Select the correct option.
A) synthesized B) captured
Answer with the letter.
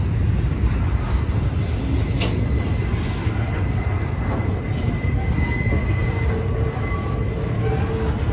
B